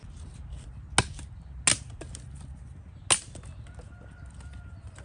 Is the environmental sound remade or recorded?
recorded